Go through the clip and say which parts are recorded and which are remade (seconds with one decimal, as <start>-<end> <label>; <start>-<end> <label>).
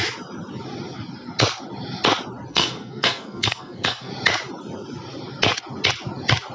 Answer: 0.0-2.5 recorded; 2.5-4.1 remade; 4.1-6.5 recorded